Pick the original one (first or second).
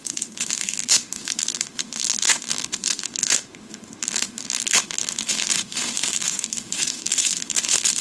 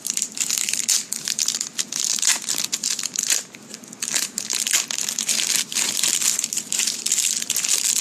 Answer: second